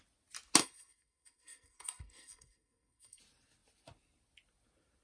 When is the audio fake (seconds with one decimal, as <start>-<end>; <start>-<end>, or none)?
0.6-3.2